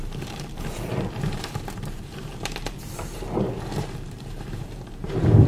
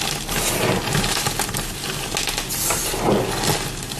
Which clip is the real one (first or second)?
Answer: second